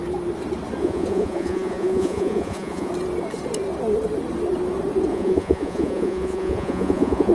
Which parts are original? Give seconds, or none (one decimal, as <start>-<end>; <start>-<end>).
0.0-0.8; 2.9-5.1

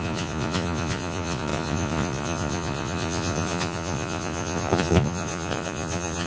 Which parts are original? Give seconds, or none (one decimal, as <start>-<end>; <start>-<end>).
none

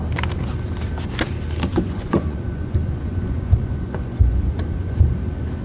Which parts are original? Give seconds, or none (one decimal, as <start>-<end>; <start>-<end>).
0.0-1.7; 5.1-5.6

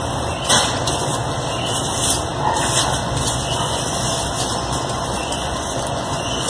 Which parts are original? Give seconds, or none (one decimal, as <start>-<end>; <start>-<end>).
1.2-2.9